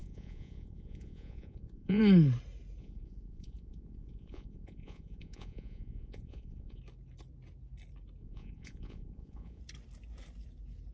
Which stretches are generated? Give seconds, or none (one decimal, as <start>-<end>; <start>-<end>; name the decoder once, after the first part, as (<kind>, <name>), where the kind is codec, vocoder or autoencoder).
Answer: 0.0-2.0 (vocoder, Vocos); 2.8-6.8; 8.2-9.6